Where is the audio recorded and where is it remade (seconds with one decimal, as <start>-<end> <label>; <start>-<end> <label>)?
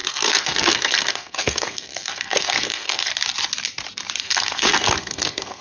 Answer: 0.0-3.1 remade; 3.1-4.2 recorded; 4.2-5.6 remade